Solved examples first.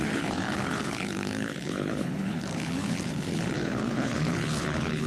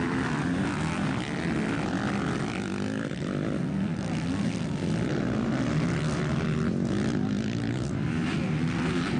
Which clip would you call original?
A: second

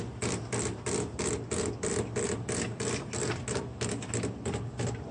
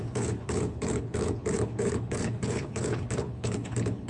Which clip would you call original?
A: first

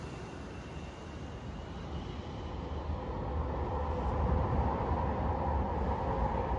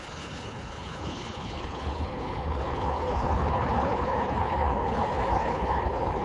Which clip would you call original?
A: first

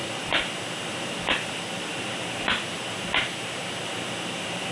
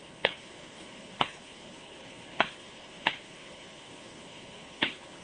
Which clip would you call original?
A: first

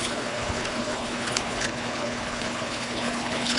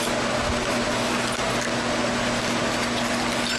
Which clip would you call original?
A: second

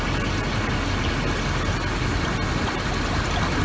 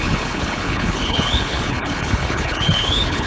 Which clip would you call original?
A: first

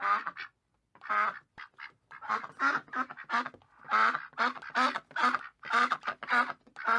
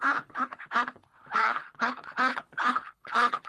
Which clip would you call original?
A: first